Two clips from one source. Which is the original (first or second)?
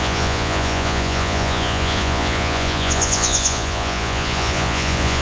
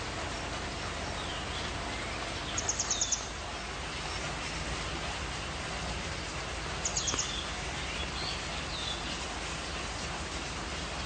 second